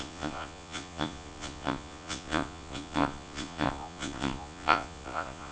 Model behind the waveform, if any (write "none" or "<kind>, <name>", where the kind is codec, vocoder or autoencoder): vocoder, Vocos